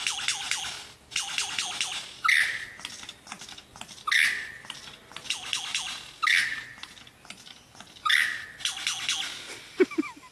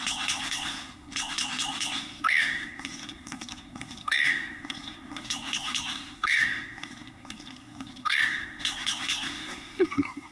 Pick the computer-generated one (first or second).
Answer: second